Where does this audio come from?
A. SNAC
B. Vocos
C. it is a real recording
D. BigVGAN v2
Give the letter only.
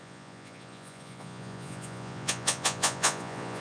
B